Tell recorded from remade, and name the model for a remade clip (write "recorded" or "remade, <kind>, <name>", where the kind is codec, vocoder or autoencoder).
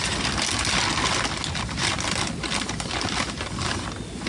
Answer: recorded